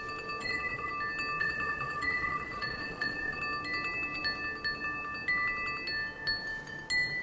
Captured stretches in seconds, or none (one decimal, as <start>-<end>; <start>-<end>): 0.0-0.4; 0.9-1.4; 3.4-7.2